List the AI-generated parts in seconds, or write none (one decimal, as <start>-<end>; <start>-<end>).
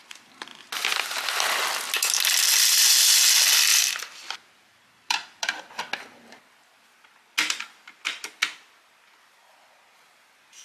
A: 3.7-5.8